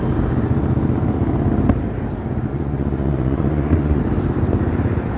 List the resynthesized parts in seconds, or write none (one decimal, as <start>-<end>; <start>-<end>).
2.5-4.0